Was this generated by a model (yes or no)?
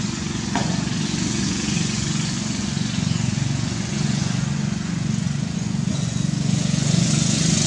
yes